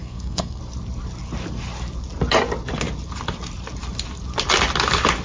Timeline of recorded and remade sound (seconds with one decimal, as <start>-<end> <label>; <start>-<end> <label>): 0.0-0.6 remade; 0.6-5.2 recorded